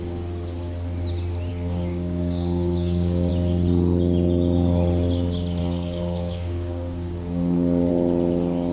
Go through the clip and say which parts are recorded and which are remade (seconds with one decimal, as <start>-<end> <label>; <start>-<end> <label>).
0.0-1.5 recorded; 1.5-3.3 remade; 3.3-5.6 recorded; 5.6-7.9 remade; 7.9-8.7 recorded